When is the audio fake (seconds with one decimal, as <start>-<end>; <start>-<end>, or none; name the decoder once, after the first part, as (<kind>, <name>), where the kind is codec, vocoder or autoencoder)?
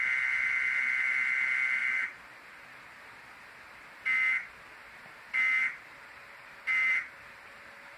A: 5.6-8.0 (vocoder, BigVGAN v2)